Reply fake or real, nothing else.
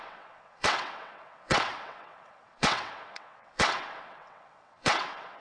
fake